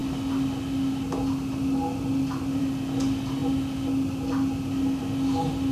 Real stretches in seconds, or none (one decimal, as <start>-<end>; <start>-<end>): 0.0-5.7